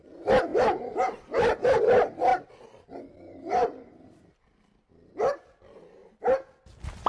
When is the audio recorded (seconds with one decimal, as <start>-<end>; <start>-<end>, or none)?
0.0-0.5; 1.8-6.0; 6.5-7.1